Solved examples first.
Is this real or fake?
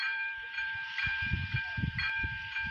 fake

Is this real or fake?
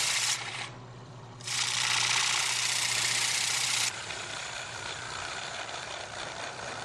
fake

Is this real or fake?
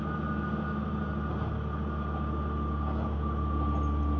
real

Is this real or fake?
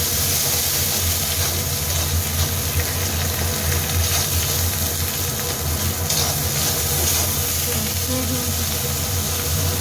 real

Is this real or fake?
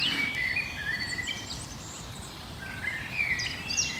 fake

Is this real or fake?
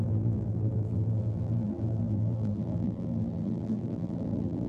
fake